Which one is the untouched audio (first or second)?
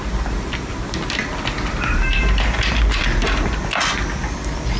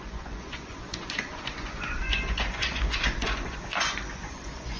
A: first